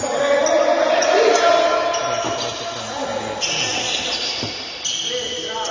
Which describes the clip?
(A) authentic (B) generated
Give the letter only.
A